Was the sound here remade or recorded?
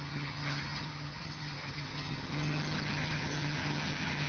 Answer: remade